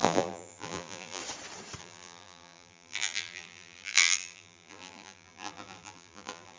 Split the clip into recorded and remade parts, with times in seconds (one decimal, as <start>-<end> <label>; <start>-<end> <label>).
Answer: 0.0-1.2 remade; 1.2-1.8 recorded; 1.8-6.6 remade